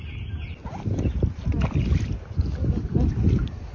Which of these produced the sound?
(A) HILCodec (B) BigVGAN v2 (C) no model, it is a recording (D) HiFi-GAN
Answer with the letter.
C